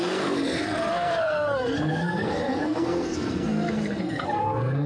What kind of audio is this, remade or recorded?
remade